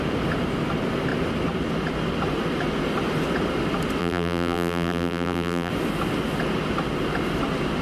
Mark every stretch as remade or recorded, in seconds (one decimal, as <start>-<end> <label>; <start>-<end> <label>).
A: 0.0-4.0 recorded; 4.0-5.7 remade; 5.7-7.8 recorded